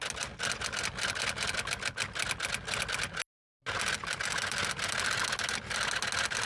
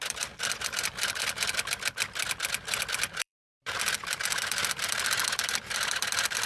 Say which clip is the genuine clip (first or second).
first